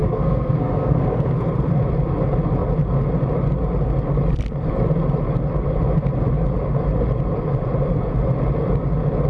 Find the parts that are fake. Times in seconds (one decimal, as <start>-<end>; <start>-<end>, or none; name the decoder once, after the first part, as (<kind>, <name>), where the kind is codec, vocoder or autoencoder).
0.0-1.7 (codec, SNAC)